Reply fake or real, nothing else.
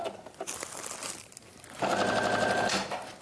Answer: real